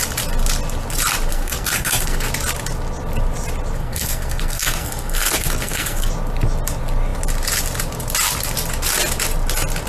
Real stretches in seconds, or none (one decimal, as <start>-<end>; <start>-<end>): 0.0-1.3; 2.3-3.8; 6.1-9.9